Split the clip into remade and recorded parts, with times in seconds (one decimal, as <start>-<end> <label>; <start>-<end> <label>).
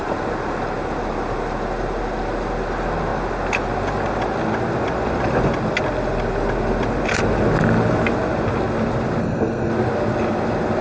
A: 0.0-9.2 recorded; 9.2-9.7 remade; 9.7-10.8 recorded